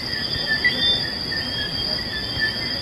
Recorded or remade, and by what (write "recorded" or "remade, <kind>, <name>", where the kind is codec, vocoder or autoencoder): recorded